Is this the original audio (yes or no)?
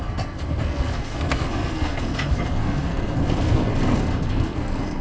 no